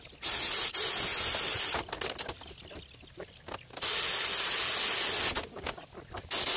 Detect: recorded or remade recorded